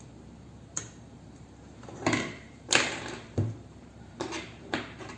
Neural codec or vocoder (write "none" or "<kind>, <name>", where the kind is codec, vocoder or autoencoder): vocoder, BigVGAN v2